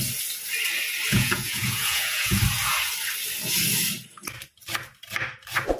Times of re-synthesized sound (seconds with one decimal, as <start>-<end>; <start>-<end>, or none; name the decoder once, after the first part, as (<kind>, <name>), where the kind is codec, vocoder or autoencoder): 1.1-2.4 (vocoder, Vocos)